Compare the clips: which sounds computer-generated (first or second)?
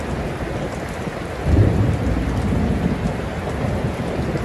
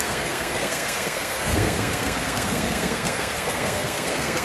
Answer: second